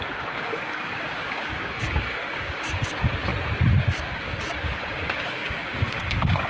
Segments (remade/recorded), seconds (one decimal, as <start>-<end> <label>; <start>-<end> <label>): 0.0-3.3 remade; 3.3-3.8 recorded; 3.8-6.5 remade